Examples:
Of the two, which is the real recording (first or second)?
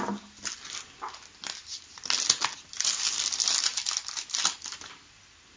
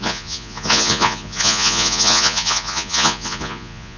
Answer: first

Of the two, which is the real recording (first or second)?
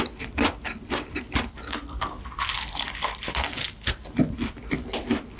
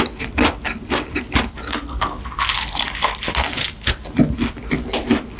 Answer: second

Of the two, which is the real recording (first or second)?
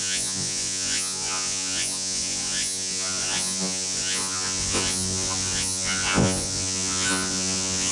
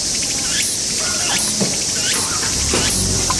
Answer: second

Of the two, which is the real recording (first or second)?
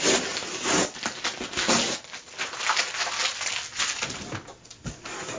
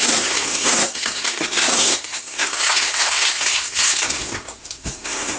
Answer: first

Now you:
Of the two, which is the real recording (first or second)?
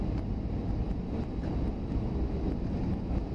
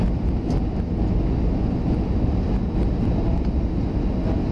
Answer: second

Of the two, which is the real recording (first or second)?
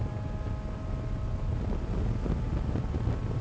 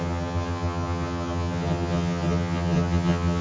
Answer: first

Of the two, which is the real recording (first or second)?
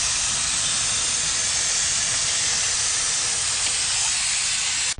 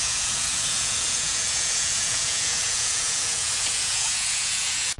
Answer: first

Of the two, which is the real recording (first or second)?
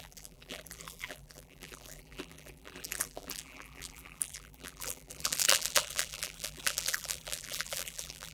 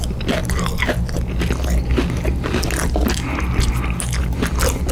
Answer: second